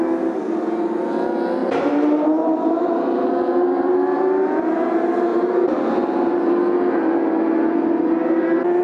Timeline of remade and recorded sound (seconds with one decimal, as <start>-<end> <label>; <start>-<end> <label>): 0.0-1.6 recorded; 1.6-3.3 remade; 3.3-5.3 recorded; 5.3-6.5 remade; 6.5-8.8 recorded